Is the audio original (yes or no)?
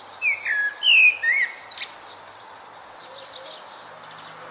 yes